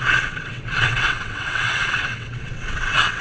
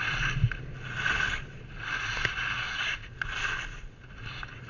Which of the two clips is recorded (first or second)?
second